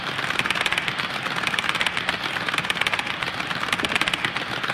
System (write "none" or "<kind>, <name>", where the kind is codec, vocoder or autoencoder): none